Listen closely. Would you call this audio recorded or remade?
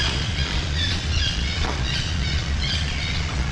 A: remade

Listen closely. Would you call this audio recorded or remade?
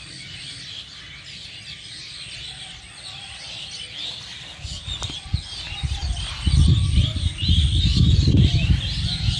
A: recorded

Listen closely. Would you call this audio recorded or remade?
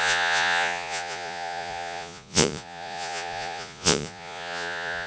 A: remade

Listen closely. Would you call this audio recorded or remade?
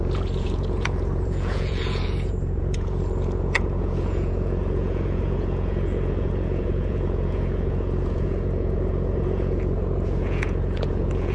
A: remade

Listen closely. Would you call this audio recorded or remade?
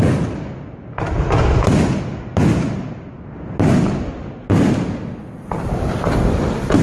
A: recorded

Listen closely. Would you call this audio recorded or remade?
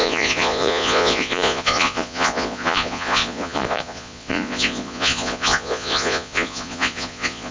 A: remade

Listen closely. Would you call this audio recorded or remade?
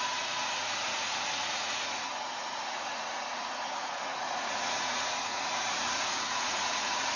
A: remade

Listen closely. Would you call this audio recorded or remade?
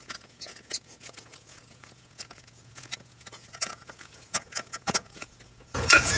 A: remade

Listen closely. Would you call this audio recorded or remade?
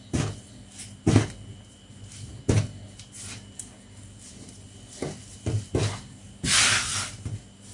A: recorded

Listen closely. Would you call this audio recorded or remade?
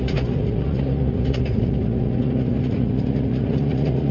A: remade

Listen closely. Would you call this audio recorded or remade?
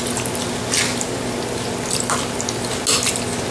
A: recorded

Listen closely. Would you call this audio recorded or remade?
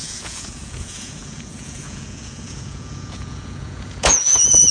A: remade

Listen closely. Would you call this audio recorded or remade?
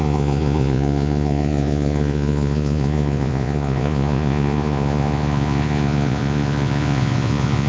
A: remade